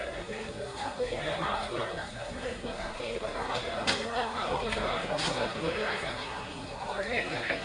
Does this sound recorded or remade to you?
remade